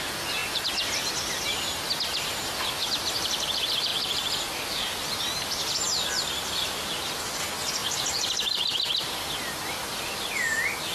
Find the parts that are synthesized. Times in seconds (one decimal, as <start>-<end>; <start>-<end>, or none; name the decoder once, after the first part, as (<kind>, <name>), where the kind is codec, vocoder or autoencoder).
none

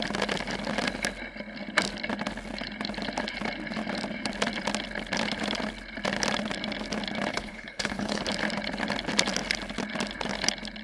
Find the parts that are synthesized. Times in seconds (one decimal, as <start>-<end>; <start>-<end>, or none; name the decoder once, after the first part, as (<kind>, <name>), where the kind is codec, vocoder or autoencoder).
7.3-8.2 (codec, HILCodec)

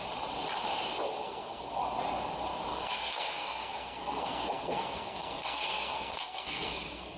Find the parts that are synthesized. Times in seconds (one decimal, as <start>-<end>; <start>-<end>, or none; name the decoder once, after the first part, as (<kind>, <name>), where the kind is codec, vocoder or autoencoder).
1.2-1.8 (codec, SNAC); 2.7-7.2

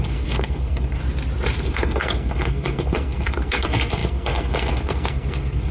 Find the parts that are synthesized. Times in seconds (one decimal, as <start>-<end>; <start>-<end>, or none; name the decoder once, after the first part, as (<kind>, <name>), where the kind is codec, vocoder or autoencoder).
0.0-1.0 (codec, SNAC); 1.6-5.7

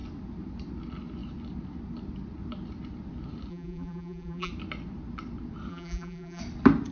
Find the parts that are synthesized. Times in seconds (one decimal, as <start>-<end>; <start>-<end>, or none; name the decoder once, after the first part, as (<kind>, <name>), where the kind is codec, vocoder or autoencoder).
3.5-4.5 (vocoder, BigVGAN v2); 5.7-6.4

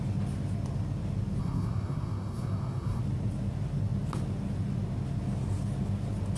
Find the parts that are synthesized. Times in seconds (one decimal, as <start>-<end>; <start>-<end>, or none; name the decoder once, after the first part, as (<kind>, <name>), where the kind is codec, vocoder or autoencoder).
1.4-3.0 (codec, SNAC)